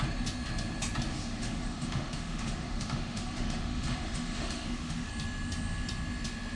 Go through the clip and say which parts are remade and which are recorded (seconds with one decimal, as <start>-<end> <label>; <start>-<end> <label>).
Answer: 0.0-1.1 recorded; 1.1-5.1 remade; 5.1-6.6 recorded